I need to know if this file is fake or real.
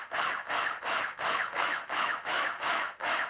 fake